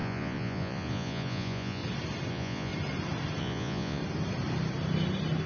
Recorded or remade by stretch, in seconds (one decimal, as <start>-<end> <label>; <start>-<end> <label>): 0.0-1.8 remade; 1.8-2.3 recorded; 2.3-2.7 remade; 2.7-3.4 recorded; 3.4-4.0 remade; 4.0-5.5 recorded